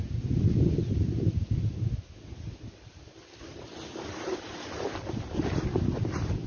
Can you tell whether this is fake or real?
real